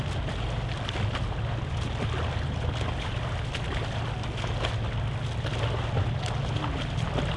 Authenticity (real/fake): real